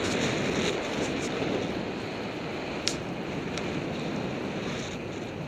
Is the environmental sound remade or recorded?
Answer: recorded